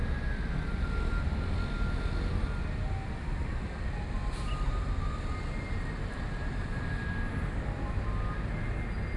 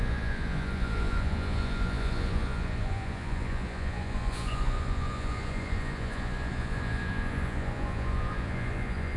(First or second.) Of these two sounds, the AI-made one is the second